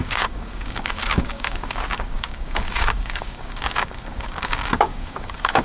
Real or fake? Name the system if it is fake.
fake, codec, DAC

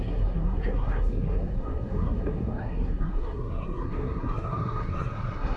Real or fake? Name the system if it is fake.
fake, codec, SNAC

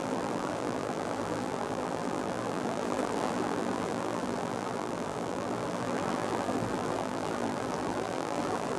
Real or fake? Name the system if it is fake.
fake, vocoder, BigVGAN v2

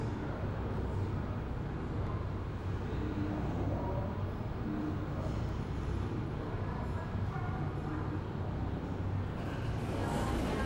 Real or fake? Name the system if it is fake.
real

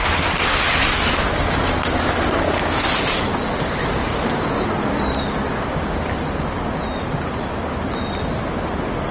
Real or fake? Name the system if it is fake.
real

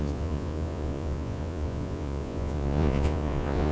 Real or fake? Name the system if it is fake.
fake, vocoder, Vocos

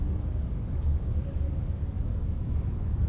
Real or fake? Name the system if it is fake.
fake, codec, DAC